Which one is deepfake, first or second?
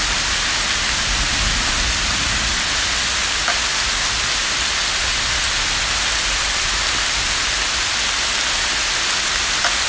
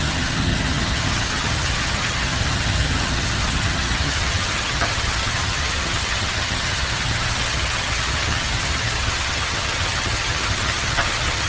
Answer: second